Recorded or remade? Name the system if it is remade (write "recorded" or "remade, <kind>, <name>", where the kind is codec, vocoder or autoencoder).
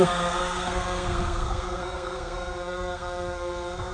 remade, codec, SNAC